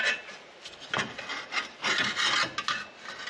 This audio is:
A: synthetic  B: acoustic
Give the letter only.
B